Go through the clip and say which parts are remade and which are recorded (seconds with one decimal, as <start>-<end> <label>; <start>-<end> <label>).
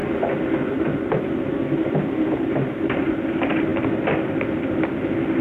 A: 0.0-3.2 remade; 3.2-5.4 recorded